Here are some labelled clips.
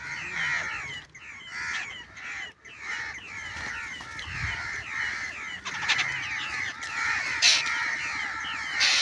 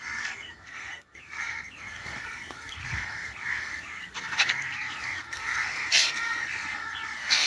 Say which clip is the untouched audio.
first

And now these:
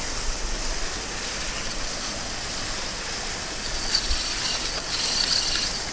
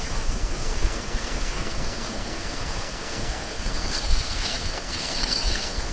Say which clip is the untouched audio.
first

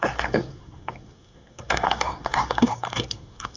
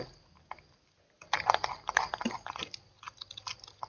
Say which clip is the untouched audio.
second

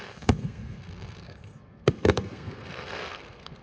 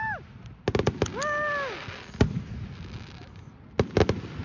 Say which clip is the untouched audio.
second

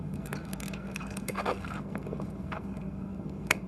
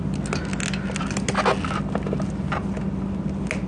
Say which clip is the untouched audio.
second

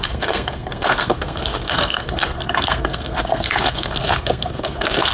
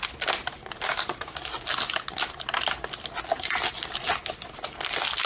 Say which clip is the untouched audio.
second